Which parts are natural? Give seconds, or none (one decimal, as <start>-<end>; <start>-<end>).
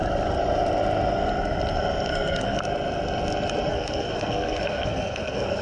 0.0-2.1; 2.6-3.7